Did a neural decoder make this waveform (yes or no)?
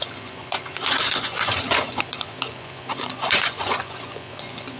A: yes